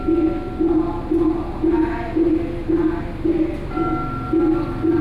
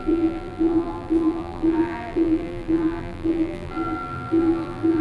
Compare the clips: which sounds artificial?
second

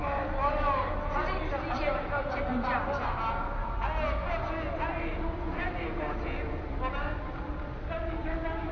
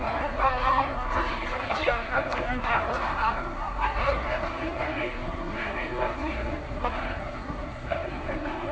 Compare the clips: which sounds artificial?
second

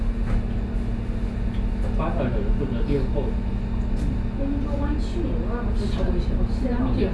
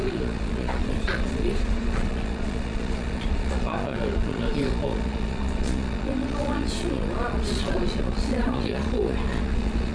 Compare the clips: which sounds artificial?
second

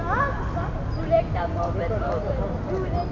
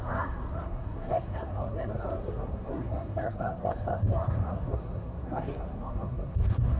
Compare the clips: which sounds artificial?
second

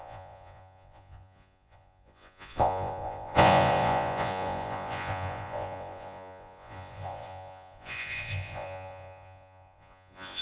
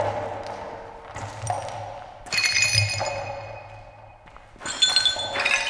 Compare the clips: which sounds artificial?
first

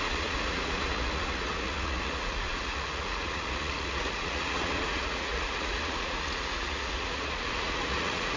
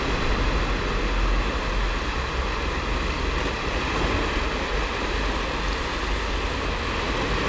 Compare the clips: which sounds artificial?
first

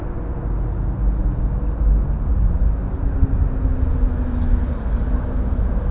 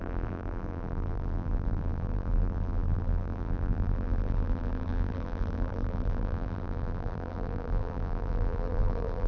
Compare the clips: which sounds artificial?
second